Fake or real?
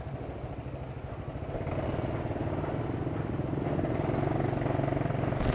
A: real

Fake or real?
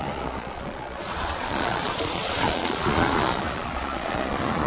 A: fake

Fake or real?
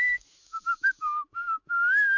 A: fake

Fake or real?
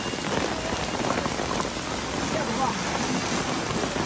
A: real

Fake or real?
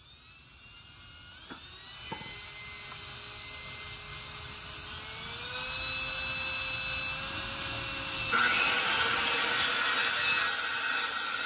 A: real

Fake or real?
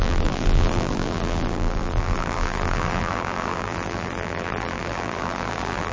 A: fake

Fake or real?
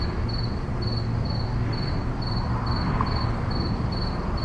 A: real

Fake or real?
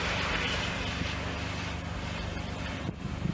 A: real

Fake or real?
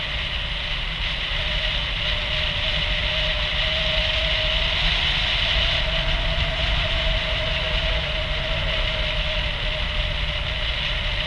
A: real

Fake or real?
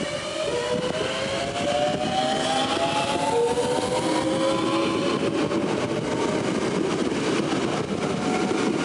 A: real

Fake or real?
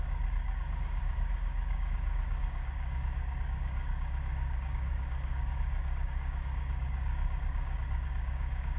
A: fake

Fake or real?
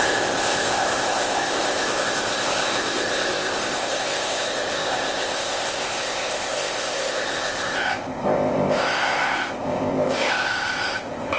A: fake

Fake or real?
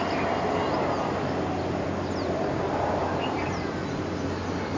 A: real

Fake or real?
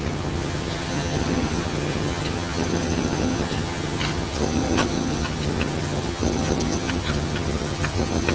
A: fake